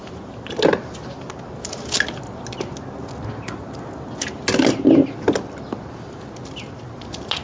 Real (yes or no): yes